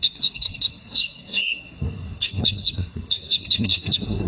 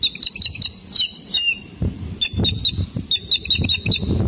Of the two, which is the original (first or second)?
second